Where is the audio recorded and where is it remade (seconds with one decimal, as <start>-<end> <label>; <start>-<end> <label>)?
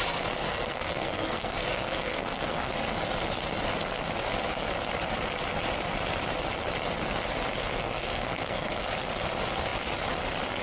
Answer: 0.0-0.5 recorded; 0.5-2.7 remade; 2.7-7.6 recorded; 7.6-8.9 remade; 8.9-10.6 recorded